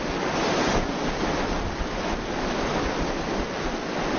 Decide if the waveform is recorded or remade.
recorded